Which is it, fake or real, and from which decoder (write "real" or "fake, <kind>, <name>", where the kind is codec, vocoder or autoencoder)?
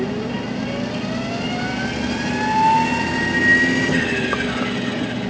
real